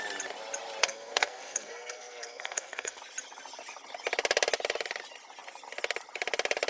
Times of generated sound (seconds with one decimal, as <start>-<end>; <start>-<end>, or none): 0.8-3.0